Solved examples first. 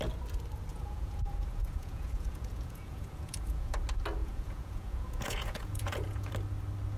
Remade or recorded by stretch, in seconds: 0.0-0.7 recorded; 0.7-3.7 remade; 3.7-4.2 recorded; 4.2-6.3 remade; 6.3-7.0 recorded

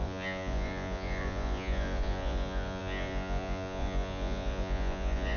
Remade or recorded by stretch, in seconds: 0.0-5.4 remade